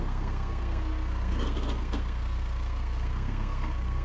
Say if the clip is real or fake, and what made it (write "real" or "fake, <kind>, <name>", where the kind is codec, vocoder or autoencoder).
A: fake, codec, SNAC